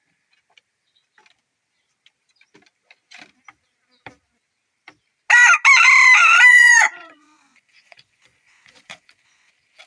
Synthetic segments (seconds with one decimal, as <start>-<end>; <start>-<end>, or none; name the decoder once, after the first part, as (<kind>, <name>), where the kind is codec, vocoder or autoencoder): 6.5-9.5 (vocoder, Vocos)